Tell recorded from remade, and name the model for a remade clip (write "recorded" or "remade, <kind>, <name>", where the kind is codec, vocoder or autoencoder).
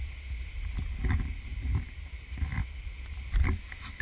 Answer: recorded